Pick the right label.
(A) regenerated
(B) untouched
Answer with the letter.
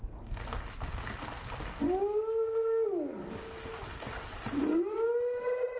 B